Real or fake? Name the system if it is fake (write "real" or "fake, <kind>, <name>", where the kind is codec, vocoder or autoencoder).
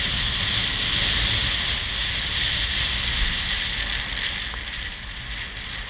real